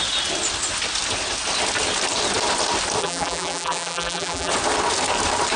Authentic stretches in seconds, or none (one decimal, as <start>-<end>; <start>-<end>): 0.0-3.0; 4.5-5.6